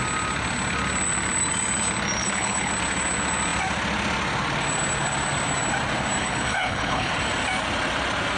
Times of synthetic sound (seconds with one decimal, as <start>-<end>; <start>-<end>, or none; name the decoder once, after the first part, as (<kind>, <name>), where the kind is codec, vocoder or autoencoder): 2.2-2.7 (codec, HILCodec); 6.2-7.1